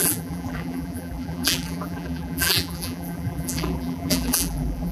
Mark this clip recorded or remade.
remade